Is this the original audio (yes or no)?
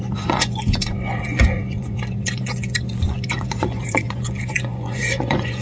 no